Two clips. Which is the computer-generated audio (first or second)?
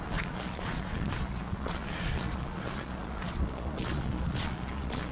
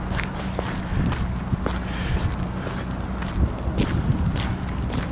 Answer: first